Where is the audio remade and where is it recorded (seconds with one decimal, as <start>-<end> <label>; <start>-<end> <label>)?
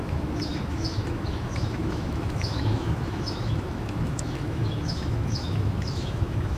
0.0-6.6 remade